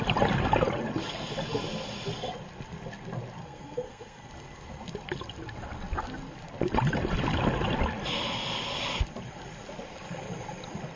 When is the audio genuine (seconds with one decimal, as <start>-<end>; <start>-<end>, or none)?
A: 0.0-3.4; 4.3-11.0